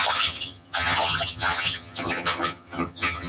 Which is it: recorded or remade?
remade